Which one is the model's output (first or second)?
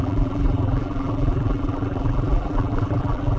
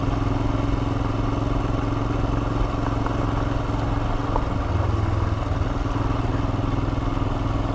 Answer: first